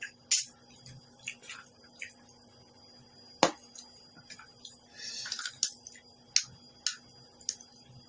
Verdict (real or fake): real